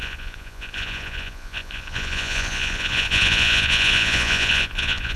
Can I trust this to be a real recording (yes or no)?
no